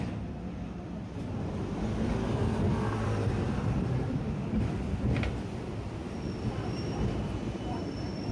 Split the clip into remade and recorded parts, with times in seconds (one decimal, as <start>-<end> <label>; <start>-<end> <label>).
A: 0.0-6.0 remade; 6.0-6.5 recorded; 6.5-8.3 remade